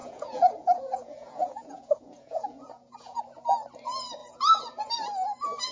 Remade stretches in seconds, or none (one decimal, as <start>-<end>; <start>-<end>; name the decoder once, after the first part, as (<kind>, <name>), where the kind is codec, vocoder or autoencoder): 0.0-3.2 (vocoder, Vocos); 4.2-4.9